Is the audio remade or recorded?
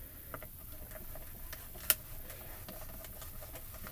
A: recorded